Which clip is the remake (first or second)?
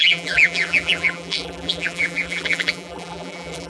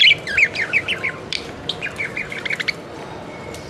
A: first